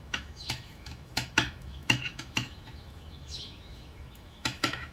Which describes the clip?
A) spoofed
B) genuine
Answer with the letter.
A